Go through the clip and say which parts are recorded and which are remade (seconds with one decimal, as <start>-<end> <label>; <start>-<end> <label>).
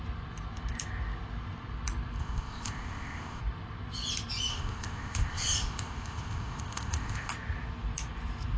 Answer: 0.0-2.2 recorded; 2.2-3.4 remade; 3.4-4.5 recorded; 4.5-7.3 remade; 7.3-8.6 recorded